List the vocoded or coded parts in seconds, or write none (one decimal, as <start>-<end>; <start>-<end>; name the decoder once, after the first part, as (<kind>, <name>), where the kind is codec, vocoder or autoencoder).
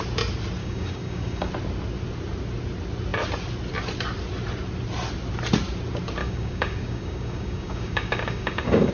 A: 0.6-1.5 (codec, DAC); 6.2-8.9